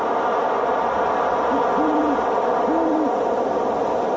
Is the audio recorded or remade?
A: recorded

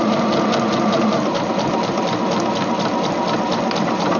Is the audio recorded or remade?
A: recorded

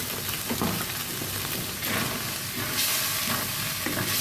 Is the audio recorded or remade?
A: recorded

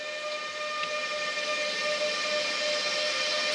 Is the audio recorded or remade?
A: recorded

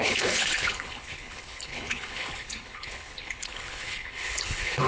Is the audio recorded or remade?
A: remade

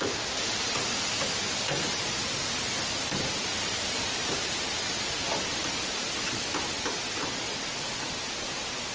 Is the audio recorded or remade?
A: recorded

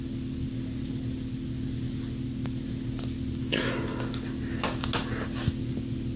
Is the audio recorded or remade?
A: recorded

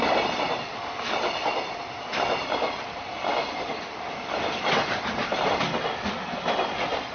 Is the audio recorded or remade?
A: recorded